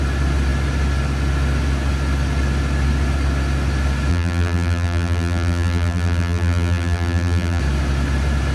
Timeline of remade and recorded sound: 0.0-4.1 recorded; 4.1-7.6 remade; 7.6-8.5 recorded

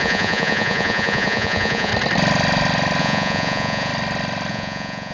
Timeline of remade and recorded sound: 0.0-1.9 remade; 1.9-3.0 recorded; 3.0-3.9 remade; 3.9-4.5 recorded; 4.5-5.1 remade

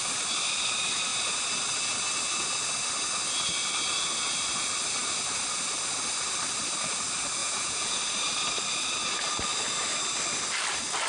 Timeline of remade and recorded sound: 0.0-7.4 recorded; 7.4-8.0 remade; 8.0-11.1 recorded